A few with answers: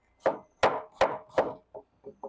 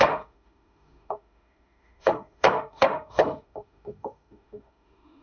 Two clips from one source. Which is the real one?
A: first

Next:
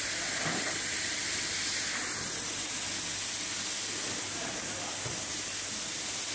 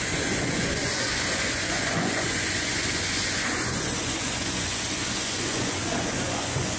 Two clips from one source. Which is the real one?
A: first